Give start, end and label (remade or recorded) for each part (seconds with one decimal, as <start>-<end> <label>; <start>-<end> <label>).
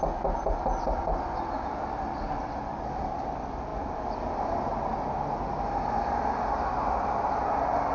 0.0-7.9 recorded